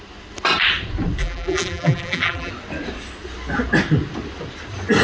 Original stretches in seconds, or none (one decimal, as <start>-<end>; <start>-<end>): 0.0-1.2; 2.5-5.0